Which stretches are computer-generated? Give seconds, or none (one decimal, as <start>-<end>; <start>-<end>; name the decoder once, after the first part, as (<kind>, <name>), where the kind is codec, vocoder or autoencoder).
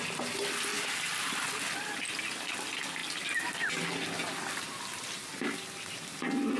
0.7-2.2 (vocoder, BigVGAN v2)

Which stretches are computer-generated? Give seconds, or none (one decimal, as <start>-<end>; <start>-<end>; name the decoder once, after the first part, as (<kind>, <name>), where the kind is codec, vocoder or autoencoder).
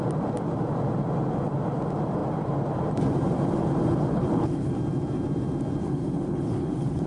4.1-4.7 (codec, HILCodec); 5.8-7.1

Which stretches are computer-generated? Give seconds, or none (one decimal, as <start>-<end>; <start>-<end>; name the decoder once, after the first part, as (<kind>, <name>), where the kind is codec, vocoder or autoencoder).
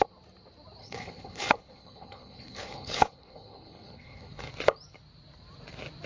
0.8-4.5 (codec, HILCodec)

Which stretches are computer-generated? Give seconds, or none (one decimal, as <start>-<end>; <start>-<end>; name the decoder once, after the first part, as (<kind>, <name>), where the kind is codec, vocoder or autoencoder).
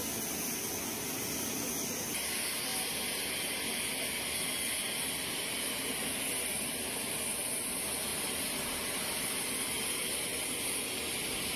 8.1-9.3 (vocoder, BigVGAN v2)